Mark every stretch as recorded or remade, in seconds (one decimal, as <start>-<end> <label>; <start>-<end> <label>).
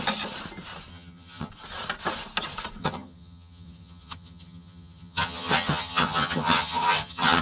0.0-0.9 recorded; 0.9-1.5 remade; 1.5-2.8 recorded; 2.8-7.4 remade